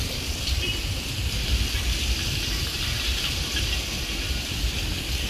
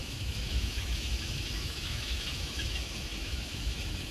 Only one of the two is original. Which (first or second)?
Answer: first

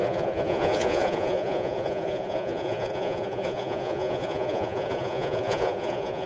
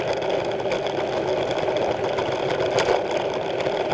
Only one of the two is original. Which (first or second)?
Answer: second